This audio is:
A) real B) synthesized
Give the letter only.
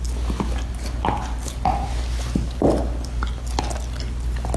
A